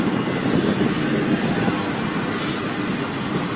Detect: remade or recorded recorded